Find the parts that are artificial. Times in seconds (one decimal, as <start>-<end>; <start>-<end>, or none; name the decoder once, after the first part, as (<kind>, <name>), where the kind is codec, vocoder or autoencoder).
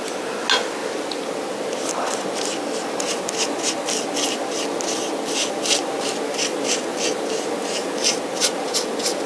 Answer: none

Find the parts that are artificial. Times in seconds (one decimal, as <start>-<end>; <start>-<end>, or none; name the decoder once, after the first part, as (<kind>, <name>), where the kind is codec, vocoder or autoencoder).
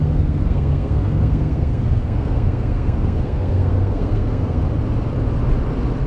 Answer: 0.0-4.6 (codec, SNAC)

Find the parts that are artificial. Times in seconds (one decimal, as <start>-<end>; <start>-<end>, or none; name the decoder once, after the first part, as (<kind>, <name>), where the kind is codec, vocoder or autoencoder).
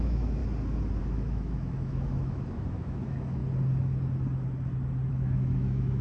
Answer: 0.0-0.4 (autoencoder, DAC-VAE); 1.0-3.4; 5.1-6.0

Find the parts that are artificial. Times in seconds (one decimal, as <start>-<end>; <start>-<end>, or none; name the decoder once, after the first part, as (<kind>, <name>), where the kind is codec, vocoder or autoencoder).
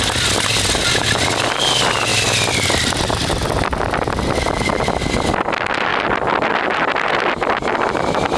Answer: 2.1-3.6 (vocoder, BigVGAN v2)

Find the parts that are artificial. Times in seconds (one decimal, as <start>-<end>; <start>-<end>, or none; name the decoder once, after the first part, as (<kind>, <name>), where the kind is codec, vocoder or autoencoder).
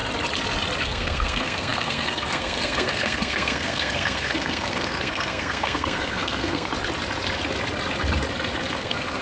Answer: 0.8-6.7 (codec, SNAC); 8.7-9.2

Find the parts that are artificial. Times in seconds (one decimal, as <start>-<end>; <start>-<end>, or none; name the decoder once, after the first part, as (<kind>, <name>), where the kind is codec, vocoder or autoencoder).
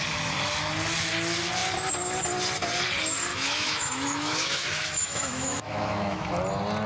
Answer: 3.3-6.3 (autoencoder, DAC-VAE)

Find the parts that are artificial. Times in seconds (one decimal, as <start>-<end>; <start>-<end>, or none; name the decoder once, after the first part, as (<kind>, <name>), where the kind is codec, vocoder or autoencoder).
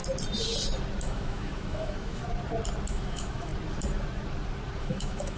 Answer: 1.0-2.2 (autoencoder, DAC-VAE); 2.9-3.5; 4.8-5.4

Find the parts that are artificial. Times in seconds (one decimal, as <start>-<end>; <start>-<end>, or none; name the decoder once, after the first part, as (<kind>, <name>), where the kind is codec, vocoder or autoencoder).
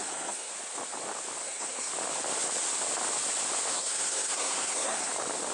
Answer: 0.0-0.5 (codec, SNAC); 1.4-1.9; 3.7-5.1